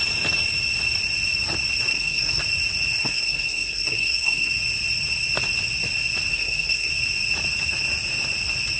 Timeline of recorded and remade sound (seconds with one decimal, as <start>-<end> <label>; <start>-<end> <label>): 0.0-1.9 recorded; 1.9-2.4 remade; 2.4-3.0 recorded; 3.0-4.5 remade; 4.5-6.3 recorded; 6.3-6.9 remade; 6.9-8.8 recorded

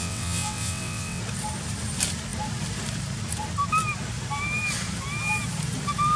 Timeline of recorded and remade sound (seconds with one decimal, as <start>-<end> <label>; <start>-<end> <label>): 0.0-1.2 remade; 1.2-6.2 recorded

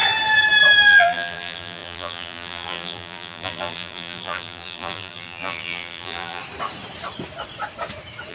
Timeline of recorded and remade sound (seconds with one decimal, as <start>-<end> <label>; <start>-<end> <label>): 0.0-0.9 recorded; 0.9-6.4 remade; 6.4-8.3 recorded

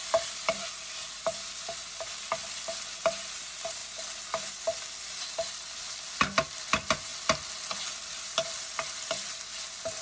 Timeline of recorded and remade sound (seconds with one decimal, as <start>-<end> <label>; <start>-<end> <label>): 0.0-10.0 recorded

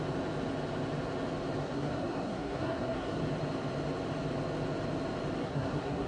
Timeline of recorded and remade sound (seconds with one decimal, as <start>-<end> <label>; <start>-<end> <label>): 0.0-1.6 recorded; 1.6-3.2 remade; 3.2-5.4 recorded; 5.4-6.1 remade

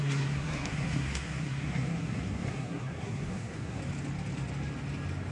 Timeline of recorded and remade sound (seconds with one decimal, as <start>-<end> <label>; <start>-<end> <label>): 0.0-3.8 remade; 3.8-5.3 recorded

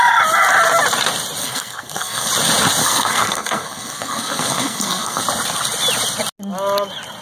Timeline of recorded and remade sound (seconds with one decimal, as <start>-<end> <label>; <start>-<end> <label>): 0.0-1.4 recorded; 1.4-2.3 remade; 2.3-2.8 recorded; 2.8-5.2 remade; 5.2-7.2 recorded

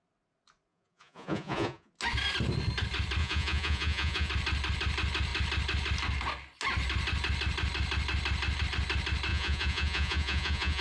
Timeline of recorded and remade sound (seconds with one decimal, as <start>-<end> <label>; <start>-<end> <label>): 0.0-0.7 recorded; 0.7-1.9 remade; 1.9-3.2 recorded; 3.2-4.3 remade; 4.3-9.3 recorded; 9.3-10.8 remade